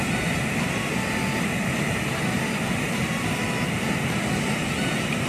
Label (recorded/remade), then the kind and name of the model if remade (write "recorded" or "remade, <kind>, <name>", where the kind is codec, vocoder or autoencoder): recorded